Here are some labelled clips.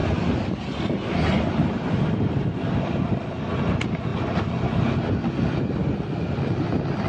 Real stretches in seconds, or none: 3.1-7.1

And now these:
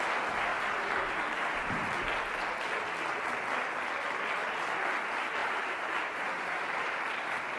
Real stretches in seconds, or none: 0.0-0.5; 1.9-5.4; 6.9-7.6

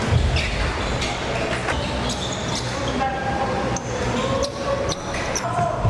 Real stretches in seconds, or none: 0.0-1.6; 2.3-3.1; 4.7-5.9

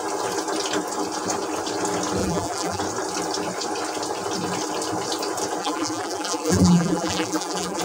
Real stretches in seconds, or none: 0.0-2.2; 2.8-5.6

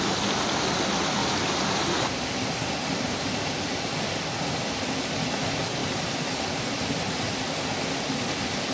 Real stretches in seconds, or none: 0.0-1.2; 4.7-5.8; 6.4-8.7

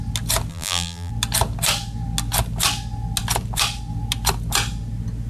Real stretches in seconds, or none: 0.0-0.5; 1.1-5.3

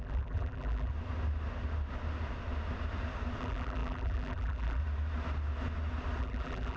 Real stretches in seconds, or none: 0.9-3.4; 4.8-6.2

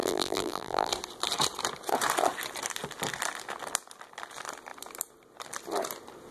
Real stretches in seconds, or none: 0.9-6.3